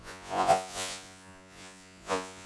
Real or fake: fake